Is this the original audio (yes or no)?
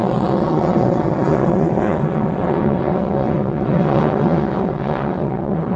no